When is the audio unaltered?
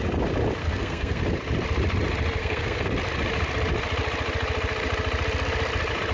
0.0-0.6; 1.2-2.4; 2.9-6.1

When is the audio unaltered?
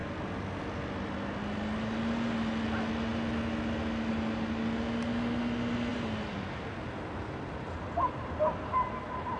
0.0-5.9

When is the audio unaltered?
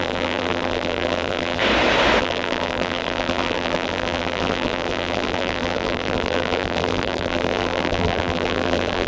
1.6-2.2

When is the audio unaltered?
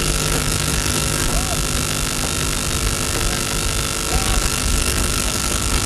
1.3-4.1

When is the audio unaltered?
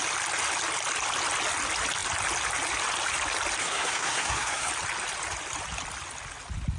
0.0-3.6; 4.7-6.8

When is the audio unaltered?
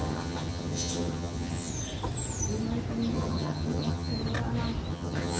1.7-3.1; 4.1-4.9